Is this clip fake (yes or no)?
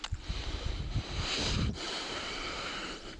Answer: yes